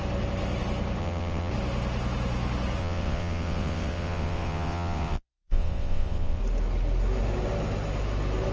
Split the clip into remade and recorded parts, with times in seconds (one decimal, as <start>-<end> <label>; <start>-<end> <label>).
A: 0.0-1.0 recorded; 1.0-1.5 remade; 1.5-2.8 recorded; 2.8-6.4 remade; 6.4-8.5 recorded